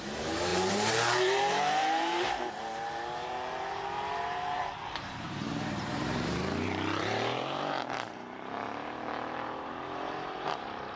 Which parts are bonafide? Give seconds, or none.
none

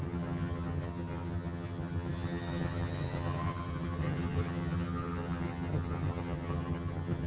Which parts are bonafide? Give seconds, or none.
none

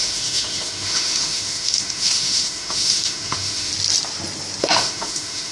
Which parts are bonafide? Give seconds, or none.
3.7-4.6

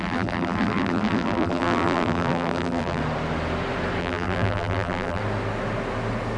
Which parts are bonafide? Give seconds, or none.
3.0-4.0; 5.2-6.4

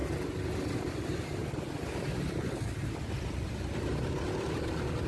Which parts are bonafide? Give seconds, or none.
0.0-5.1

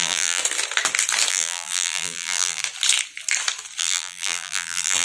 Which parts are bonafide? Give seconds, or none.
0.4-1.3; 2.6-3.8

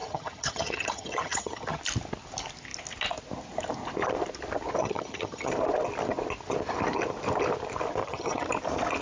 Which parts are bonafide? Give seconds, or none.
1.8-4.8; 5.5-8.0; 8.5-9.0